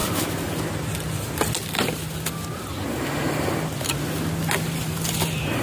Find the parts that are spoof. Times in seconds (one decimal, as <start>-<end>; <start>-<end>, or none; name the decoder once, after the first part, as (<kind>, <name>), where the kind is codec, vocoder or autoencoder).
none